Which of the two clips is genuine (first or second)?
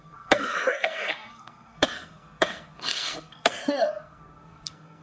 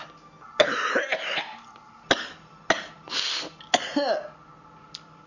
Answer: second